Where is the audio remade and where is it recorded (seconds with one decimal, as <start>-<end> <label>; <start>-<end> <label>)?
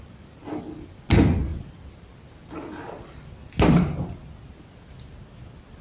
0.0-5.8 recorded